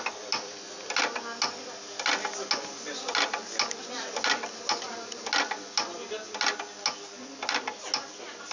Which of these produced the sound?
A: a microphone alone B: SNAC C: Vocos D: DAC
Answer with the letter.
A